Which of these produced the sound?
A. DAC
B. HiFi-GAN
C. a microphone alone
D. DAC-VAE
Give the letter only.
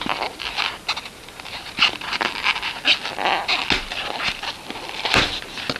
C